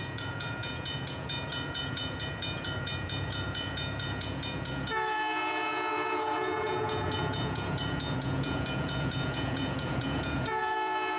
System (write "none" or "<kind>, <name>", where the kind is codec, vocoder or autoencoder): vocoder, Vocos